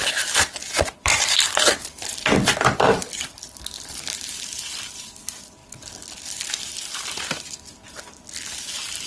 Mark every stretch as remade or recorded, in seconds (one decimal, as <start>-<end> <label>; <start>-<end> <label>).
0.0-5.6 remade; 5.6-8.5 recorded; 8.5-9.1 remade